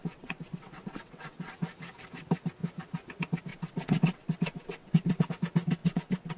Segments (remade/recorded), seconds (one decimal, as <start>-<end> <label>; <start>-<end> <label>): 0.0-1.5 remade; 1.5-3.5 recorded; 3.5-5.3 remade; 5.3-5.8 recorded; 5.8-6.4 remade